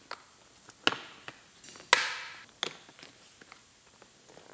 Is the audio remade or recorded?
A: recorded